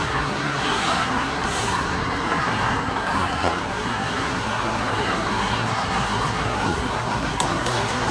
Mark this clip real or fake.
fake